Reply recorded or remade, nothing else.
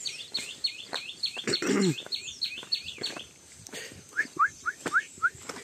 remade